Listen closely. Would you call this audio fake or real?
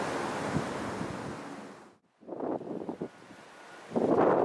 real